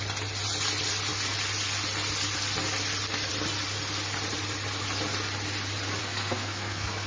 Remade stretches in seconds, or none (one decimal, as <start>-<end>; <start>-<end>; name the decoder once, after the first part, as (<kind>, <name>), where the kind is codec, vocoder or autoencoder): 6.0-7.1 (codec, SNAC)